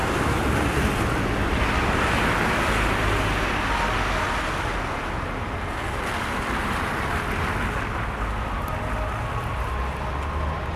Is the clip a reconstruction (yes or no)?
no